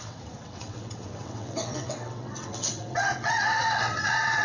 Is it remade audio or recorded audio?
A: remade